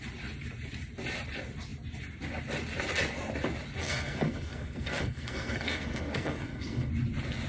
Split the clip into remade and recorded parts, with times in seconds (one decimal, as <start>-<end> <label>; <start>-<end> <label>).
0.0-3.8 recorded; 3.8-6.9 remade; 6.9-7.5 recorded